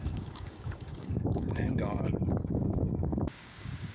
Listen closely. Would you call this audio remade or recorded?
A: remade